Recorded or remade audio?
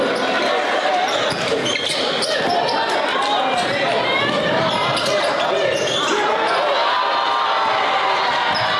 recorded